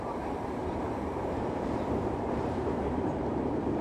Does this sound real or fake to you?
fake